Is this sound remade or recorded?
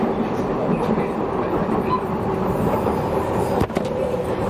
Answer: remade